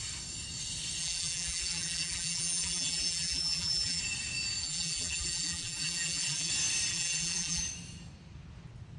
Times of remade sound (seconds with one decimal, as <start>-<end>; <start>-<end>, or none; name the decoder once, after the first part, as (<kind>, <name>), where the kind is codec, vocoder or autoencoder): 1.0-4.0 (vocoder, BigVGAN v2); 4.6-6.5; 6.9-7.6